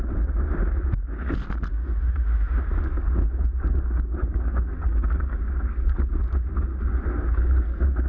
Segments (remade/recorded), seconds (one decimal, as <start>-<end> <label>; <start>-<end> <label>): 0.0-1.7 recorded; 1.7-2.6 remade; 2.6-8.1 recorded